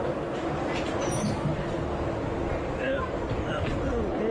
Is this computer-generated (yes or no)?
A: no